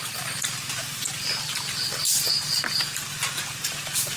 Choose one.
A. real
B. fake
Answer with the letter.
A